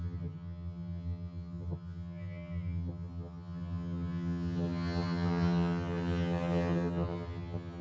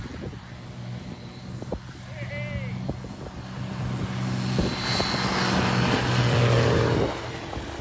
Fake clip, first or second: first